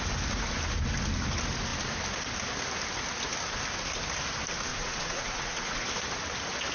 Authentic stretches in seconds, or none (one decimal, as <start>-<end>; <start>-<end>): 0.0-4.7; 5.8-6.7